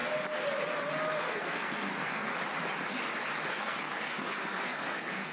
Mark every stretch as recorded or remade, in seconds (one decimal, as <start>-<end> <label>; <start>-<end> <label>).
0.0-1.2 recorded; 1.2-2.3 remade; 2.3-3.5 recorded; 3.5-5.3 remade